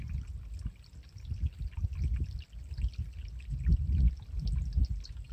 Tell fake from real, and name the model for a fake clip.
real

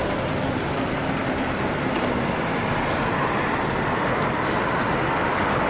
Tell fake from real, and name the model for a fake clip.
real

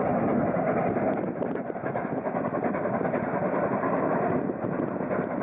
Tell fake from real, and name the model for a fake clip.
real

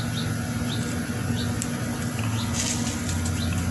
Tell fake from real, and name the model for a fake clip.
real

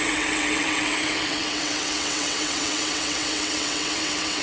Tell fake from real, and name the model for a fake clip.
fake, vocoder, WaveNeXt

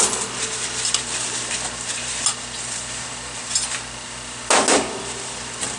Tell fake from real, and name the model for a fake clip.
real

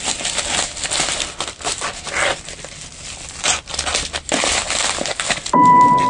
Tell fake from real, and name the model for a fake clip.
real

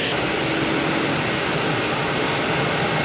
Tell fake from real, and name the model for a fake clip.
real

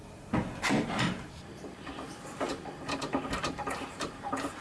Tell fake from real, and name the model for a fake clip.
fake, vocoder, BigVGAN v2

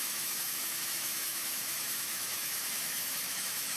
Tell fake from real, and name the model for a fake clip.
fake, autoencoder, DAC-VAE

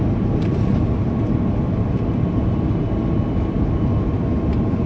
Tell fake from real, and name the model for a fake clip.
real